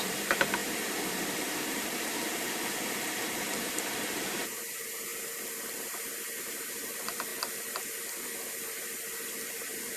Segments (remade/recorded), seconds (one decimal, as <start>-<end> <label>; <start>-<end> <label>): 0.0-5.1 remade; 5.1-6.4 recorded; 6.4-7.3 remade; 7.3-9.5 recorded; 9.5-10.0 remade